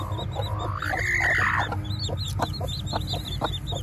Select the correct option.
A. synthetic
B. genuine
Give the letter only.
B